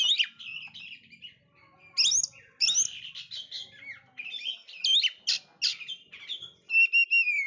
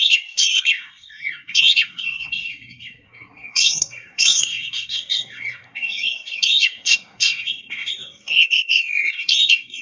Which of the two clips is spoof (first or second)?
second